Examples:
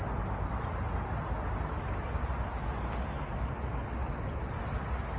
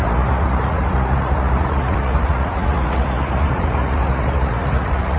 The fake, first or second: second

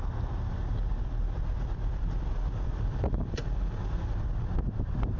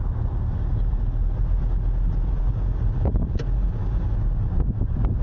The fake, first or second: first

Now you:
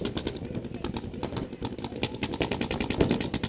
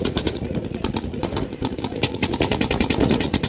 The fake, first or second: second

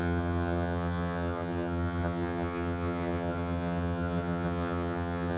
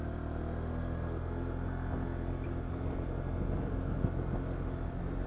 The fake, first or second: first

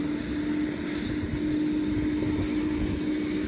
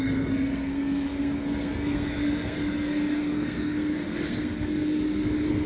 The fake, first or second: second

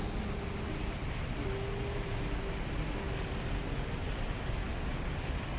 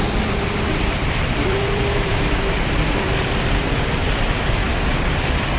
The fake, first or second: second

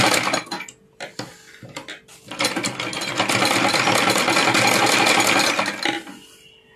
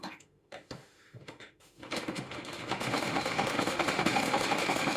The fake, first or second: second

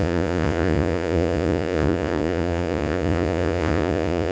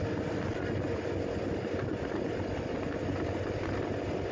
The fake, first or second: first